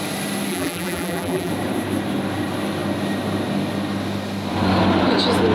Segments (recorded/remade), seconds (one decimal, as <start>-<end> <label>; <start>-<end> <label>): 0.0-0.5 recorded; 0.5-1.5 remade; 1.5-5.5 recorded